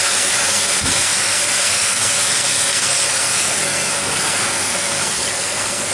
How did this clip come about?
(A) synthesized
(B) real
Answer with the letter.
A